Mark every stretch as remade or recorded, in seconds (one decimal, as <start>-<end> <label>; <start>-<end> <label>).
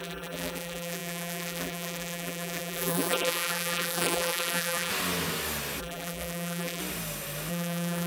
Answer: 0.0-4.9 remade; 4.9-5.8 recorded; 5.8-6.8 remade; 6.8-7.5 recorded; 7.5-8.1 remade